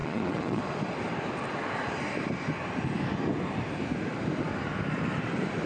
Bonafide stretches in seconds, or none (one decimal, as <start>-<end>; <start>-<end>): 0.6-5.7